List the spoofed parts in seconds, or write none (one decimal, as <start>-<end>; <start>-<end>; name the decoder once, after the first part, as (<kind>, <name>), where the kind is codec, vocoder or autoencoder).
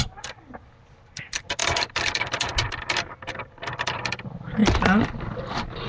0.0-2.5 (vocoder, BigVGAN v2); 3.3-4.6